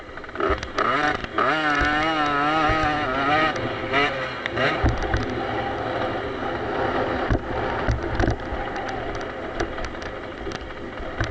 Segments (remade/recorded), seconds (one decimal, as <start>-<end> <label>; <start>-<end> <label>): 0.0-11.3 recorded